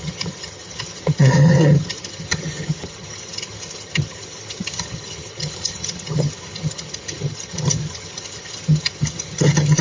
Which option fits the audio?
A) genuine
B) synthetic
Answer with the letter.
B